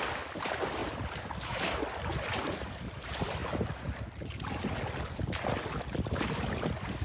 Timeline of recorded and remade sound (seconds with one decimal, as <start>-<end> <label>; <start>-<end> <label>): 0.0-7.0 recorded